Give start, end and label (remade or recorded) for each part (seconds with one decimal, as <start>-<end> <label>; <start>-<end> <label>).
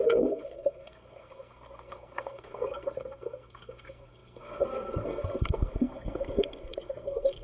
0.0-7.4 remade